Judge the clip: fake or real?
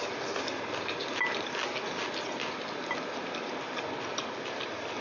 real